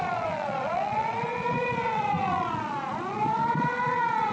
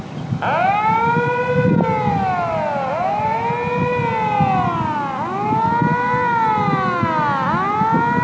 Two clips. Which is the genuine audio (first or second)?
second